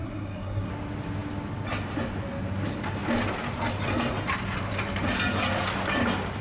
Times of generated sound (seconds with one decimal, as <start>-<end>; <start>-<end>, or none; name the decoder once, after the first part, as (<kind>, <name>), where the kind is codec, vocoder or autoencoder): 0.0-0.7 (codec, SNAC)